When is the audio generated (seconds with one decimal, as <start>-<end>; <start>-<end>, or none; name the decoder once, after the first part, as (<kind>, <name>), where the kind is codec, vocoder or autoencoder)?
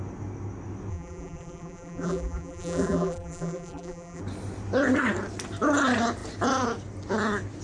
0.9-4.2 (vocoder, BigVGAN v2)